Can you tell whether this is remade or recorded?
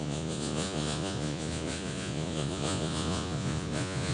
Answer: remade